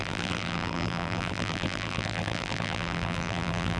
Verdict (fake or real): fake